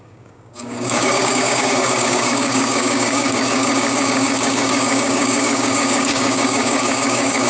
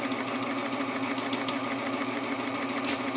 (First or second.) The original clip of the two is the second